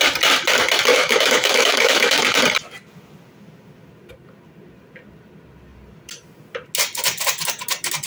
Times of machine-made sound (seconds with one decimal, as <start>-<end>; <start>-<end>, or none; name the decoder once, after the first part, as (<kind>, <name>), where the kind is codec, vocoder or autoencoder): 0.9-2.4 (autoencoder, DAC-VAE)